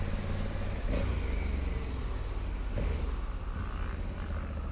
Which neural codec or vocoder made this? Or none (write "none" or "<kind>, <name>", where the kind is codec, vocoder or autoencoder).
none